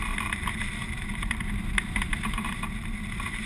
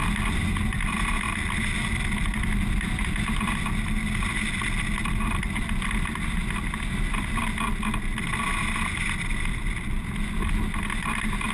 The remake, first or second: first